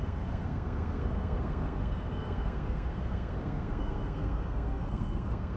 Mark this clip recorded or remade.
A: remade